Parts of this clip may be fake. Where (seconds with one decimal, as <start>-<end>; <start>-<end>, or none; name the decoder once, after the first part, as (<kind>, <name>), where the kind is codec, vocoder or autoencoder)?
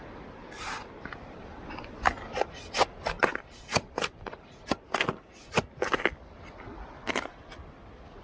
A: none